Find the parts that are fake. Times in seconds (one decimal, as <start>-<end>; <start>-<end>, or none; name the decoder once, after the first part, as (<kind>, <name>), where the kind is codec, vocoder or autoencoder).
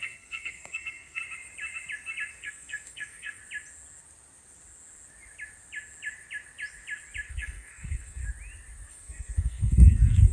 0.0-1.2 (codec, SNAC); 2.3-3.4; 7.3-8.2; 8.9-10.3